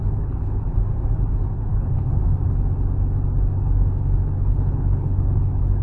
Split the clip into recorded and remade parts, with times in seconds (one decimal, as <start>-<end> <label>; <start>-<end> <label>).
0.0-0.6 remade; 0.6-1.7 recorded; 1.7-2.2 remade; 2.2-4.2 recorded; 4.2-5.8 remade